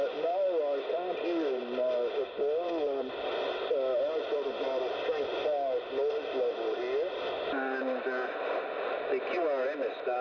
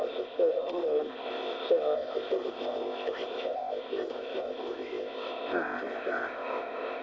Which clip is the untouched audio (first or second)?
first